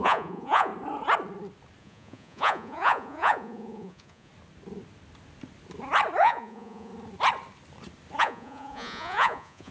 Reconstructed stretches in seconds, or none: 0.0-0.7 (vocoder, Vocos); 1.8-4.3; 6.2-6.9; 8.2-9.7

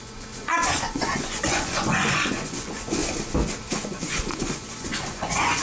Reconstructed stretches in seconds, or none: 0.0-3.0 (vocoder, Vocos); 3.7-5.6

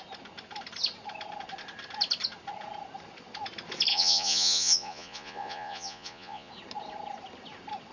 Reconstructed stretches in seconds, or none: 3.9-6.5 (vocoder, Vocos)

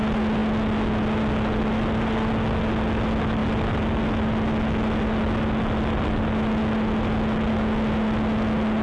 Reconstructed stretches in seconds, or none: none

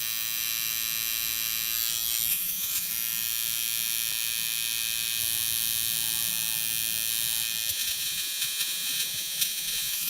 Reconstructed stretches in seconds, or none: 2.3-2.9 (vocoder, Vocos); 7.7-10.1

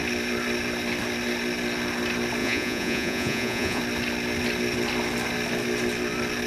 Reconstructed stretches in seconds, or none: 2.4-3.8 (vocoder, Vocos)

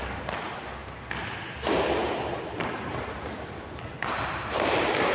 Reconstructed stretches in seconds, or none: none